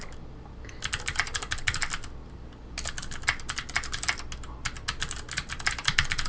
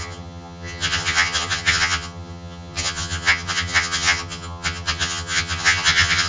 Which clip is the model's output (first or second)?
second